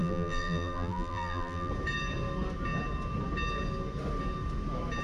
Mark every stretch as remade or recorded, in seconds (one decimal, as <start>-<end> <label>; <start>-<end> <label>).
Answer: 0.0-1.7 remade; 1.7-5.0 recorded